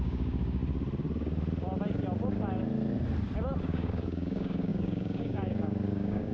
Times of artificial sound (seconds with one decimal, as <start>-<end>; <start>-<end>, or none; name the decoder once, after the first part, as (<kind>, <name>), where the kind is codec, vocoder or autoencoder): 0.0-0.6 (codec, DAC); 3.6-6.3